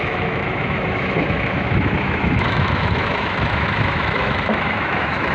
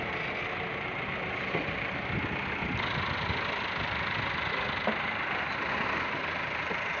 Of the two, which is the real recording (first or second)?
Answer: second